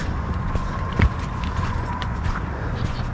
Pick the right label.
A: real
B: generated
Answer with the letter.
B